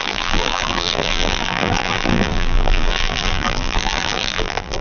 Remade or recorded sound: remade